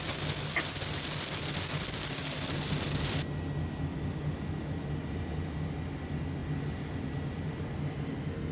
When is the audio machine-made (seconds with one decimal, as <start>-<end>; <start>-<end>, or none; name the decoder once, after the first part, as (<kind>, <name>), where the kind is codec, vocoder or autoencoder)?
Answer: 6.4-7.7 (vocoder, BigVGAN v2)